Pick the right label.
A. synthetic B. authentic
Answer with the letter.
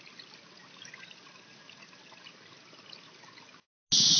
B